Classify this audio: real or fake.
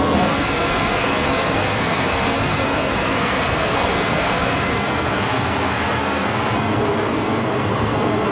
fake